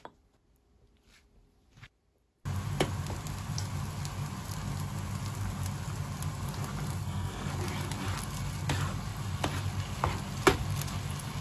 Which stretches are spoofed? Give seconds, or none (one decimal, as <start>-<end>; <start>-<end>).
7.0-7.5